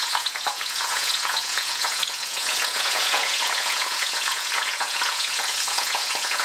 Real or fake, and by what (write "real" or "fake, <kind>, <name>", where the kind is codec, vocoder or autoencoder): fake, vocoder, Vocos